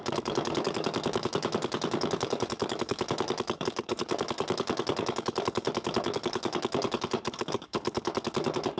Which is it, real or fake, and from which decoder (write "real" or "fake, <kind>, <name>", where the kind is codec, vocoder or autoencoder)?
fake, codec, DAC